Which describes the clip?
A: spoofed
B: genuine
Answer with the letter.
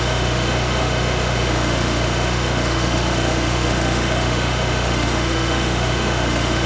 A